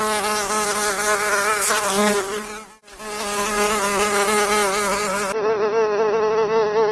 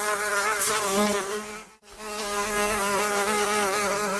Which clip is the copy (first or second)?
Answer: second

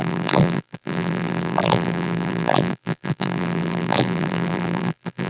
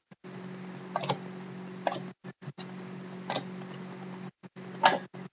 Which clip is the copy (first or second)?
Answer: first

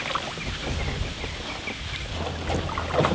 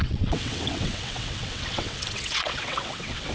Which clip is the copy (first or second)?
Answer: second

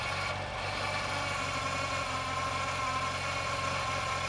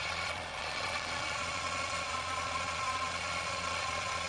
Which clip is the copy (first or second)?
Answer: second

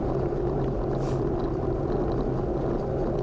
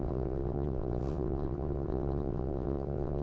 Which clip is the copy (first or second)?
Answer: second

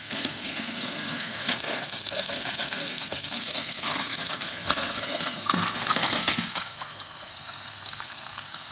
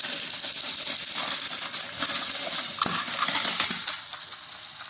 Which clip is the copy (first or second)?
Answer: first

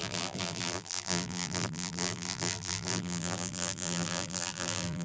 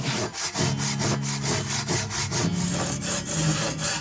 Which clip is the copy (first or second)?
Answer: first